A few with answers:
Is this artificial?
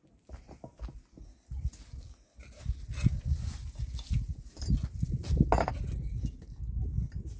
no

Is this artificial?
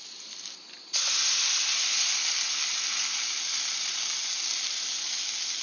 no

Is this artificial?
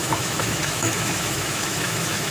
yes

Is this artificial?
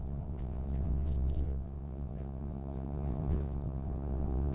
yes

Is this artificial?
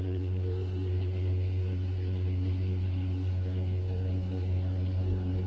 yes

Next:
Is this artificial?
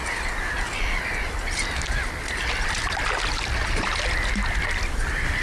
no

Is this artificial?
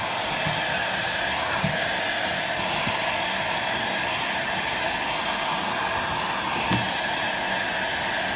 no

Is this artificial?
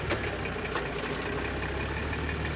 no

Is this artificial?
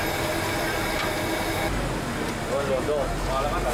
no